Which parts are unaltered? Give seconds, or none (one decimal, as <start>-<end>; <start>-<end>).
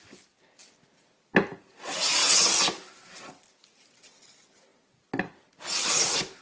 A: 0.0-6.4